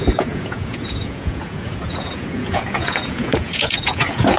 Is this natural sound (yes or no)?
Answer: no